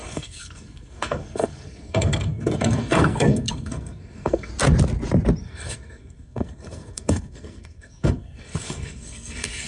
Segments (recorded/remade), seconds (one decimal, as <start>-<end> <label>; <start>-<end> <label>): 0.0-4.5 remade; 4.5-5.4 recorded; 5.4-9.7 remade

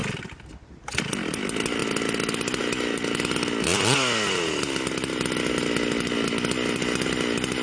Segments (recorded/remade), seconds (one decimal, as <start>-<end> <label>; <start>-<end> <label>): 0.0-7.6 recorded